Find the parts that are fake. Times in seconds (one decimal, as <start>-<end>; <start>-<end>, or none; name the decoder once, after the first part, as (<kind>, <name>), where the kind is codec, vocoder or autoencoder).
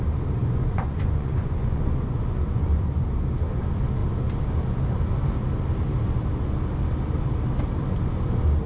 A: 0.4-2.9 (vocoder, Vocos)